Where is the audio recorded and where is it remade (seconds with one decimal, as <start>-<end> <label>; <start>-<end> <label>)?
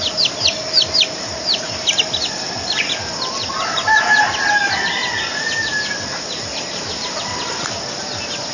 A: 0.0-8.5 recorded